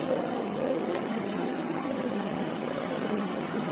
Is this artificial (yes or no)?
yes